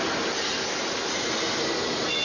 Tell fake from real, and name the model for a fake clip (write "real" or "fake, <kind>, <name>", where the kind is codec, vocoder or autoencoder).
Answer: real